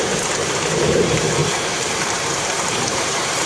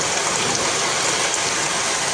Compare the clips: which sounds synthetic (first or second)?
first